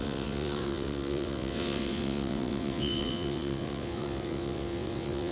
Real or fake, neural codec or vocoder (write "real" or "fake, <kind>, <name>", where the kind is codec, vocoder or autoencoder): fake, vocoder, WaveNeXt